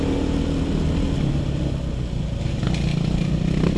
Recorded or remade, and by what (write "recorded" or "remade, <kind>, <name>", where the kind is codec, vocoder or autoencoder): recorded